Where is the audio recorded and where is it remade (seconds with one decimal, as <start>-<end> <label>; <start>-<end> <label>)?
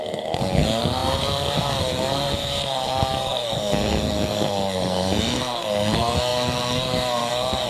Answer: 0.0-7.7 remade